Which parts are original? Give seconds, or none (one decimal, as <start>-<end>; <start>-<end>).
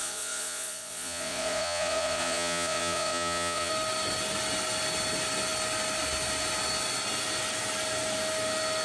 3.7-8.8